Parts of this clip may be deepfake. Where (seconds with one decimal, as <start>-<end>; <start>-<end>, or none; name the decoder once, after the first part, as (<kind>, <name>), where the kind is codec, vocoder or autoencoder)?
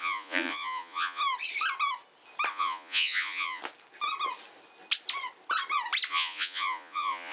0.0-1.2 (vocoder, Vocos); 2.5-3.6; 6.1-7.3